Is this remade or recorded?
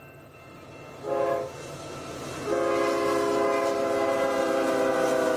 recorded